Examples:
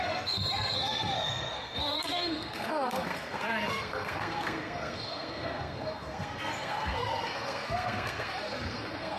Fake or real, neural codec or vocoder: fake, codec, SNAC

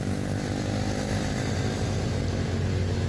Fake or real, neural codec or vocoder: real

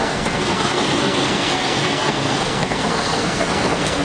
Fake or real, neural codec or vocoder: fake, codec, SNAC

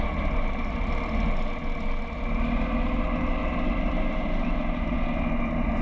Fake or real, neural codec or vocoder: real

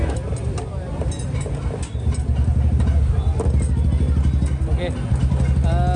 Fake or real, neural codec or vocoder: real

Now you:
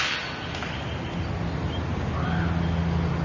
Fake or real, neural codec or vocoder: real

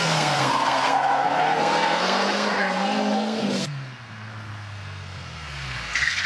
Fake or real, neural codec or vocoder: fake, codec, SNAC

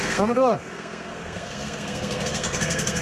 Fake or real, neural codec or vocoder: fake, codec, SNAC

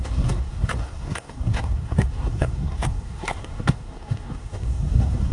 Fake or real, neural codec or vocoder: fake, codec, SNAC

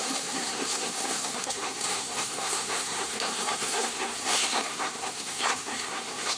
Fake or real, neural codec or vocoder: fake, codec, SNAC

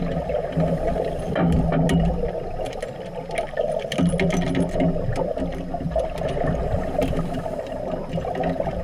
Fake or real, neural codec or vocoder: real